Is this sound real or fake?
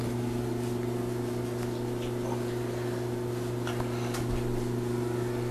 real